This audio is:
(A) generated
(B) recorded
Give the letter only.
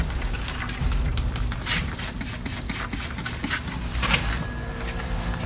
B